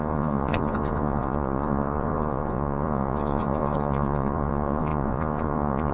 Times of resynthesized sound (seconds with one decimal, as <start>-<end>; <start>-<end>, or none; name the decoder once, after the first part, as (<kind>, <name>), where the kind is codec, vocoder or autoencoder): 0.0-5.9 (vocoder, Vocos)